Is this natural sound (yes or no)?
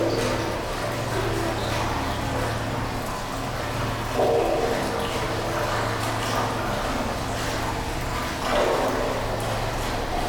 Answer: yes